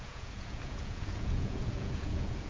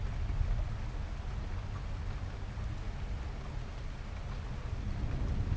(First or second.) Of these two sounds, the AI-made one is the first